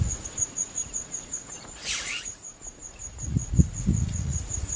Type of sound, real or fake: fake